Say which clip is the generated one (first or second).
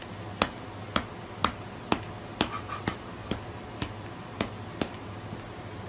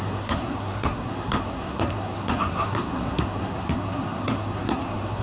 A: second